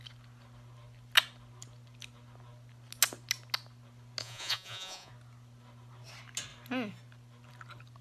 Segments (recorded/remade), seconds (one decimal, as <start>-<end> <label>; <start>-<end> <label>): 0.0-4.2 recorded; 4.2-5.1 remade; 5.1-8.0 recorded